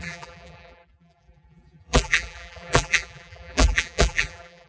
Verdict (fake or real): fake